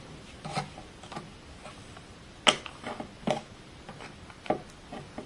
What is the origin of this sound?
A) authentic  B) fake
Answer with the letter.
A